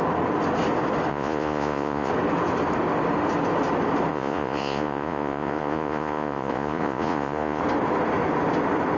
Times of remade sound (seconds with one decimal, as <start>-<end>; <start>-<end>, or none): 1.1-2.1; 4.1-7.6